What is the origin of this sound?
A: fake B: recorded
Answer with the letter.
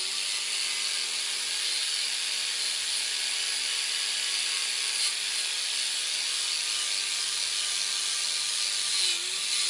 B